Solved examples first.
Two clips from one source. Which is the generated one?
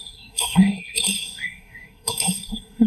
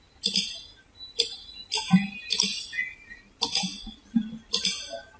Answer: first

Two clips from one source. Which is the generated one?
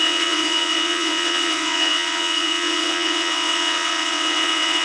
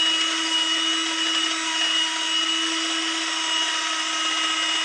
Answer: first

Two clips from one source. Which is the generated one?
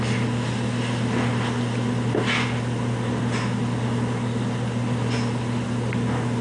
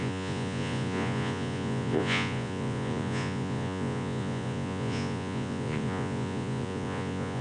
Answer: second